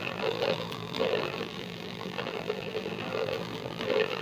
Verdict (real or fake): fake